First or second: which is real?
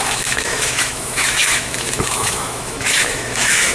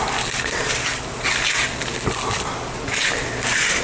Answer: second